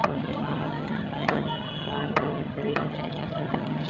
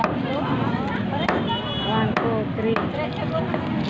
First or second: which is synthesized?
first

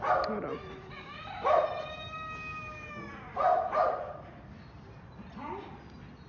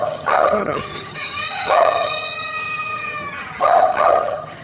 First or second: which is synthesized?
second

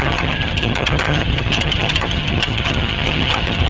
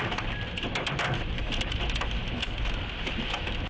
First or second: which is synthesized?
first